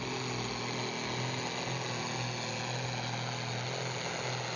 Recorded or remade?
recorded